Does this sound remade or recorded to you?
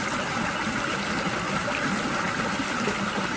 recorded